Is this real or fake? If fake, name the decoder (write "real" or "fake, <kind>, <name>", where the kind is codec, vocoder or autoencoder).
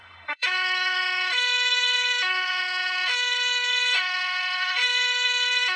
fake, autoencoder, DAC-VAE